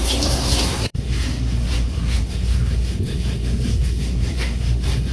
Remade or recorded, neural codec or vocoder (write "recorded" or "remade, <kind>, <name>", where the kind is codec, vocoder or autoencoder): remade, codec, SNAC